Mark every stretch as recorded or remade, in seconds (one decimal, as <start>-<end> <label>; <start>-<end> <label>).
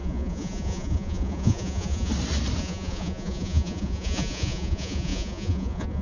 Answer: 0.0-2.1 remade; 2.1-2.6 recorded; 2.6-6.0 remade